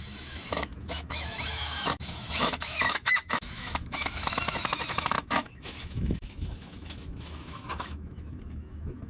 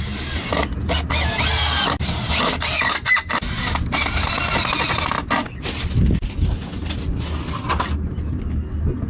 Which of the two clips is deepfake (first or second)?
first